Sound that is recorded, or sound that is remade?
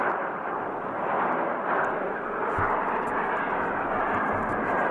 recorded